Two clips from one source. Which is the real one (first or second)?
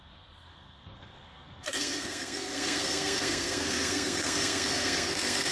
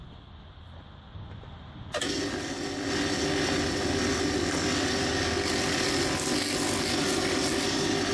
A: second